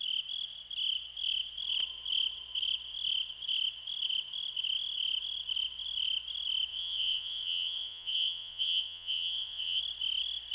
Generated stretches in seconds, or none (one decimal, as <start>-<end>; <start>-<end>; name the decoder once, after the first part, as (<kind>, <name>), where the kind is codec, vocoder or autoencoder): 6.7-9.8 (vocoder, Vocos)